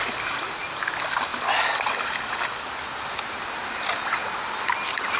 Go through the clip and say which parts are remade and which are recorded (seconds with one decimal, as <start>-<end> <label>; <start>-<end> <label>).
0.0-5.2 recorded

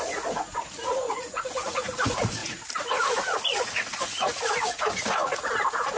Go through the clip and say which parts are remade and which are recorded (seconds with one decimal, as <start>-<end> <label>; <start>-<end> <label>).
0.0-6.0 remade